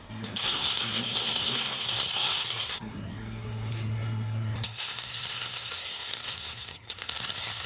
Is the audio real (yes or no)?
no